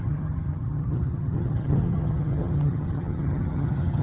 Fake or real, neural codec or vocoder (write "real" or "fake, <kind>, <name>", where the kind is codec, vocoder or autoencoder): fake, vocoder, HiFi-GAN